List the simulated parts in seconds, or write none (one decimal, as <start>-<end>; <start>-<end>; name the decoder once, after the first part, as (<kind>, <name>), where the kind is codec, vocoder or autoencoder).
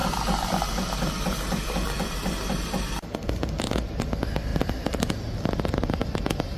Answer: 0.0-4.0 (vocoder, BigVGAN v2); 4.5-6.1